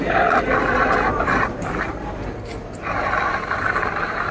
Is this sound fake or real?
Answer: fake